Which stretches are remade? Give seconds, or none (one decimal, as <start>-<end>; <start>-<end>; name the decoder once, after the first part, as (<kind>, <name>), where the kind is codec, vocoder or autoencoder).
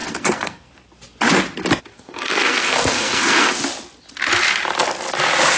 0.0-0.7 (codec, SNAC); 1.9-3.6